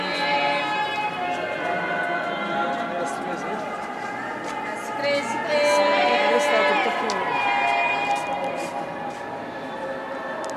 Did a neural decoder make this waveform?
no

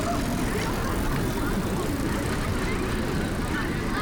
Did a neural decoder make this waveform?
no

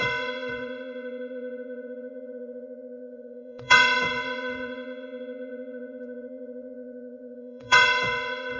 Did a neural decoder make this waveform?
yes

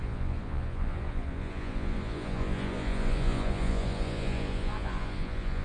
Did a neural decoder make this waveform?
yes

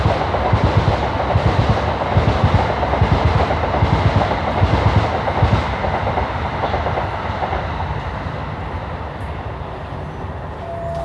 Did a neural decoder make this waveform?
no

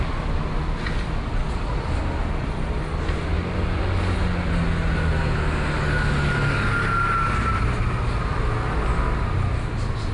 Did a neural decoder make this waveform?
no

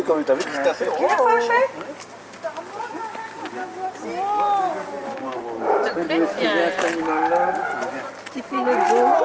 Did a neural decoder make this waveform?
no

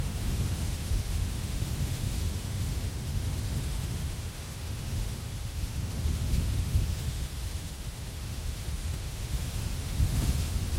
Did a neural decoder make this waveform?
yes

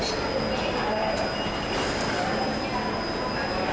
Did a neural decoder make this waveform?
no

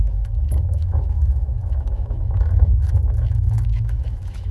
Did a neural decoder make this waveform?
yes